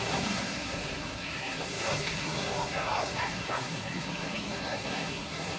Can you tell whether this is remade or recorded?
remade